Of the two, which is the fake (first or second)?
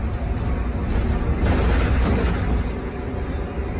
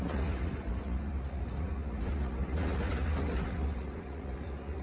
second